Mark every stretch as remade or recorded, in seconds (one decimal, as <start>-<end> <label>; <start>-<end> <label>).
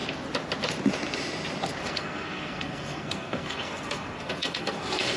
0.0-1.8 recorded; 1.8-5.2 remade